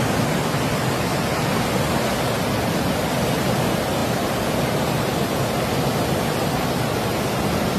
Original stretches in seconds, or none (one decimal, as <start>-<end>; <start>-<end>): 0.0-7.8